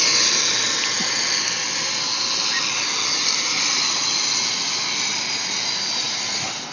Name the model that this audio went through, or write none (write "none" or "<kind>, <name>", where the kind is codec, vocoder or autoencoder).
none